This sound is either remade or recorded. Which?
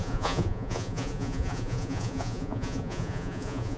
remade